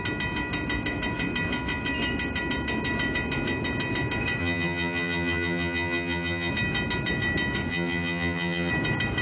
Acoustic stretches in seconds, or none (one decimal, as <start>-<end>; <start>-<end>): 0.0-4.4; 6.5-7.7; 8.7-9.2